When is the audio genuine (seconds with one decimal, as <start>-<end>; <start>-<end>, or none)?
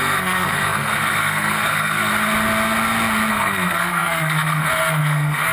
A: 2.1-3.3